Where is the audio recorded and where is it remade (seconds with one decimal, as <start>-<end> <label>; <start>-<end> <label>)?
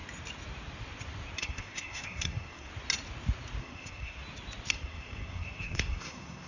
0.0-1.4 recorded; 1.4-2.7 remade; 2.7-3.6 recorded; 3.6-4.2 remade; 4.2-4.7 recorded; 4.7-6.5 remade